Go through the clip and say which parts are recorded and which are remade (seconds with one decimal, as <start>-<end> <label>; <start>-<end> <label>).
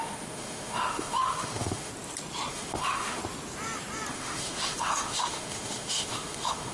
0.0-1.9 remade; 1.9-2.5 recorded; 2.5-3.2 remade; 3.2-4.1 recorded; 4.1-6.7 remade